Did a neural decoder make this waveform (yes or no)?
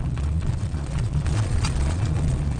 yes